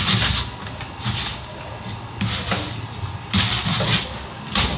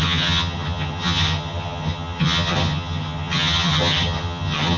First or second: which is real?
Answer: first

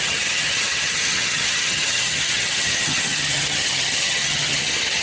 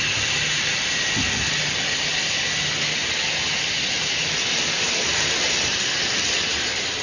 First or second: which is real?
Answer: second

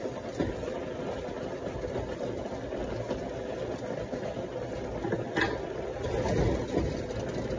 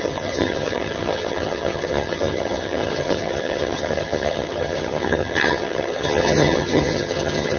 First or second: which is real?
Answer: first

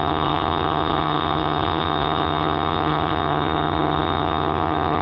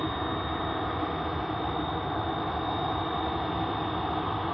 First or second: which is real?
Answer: second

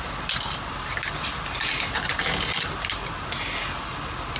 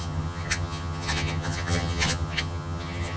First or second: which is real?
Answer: first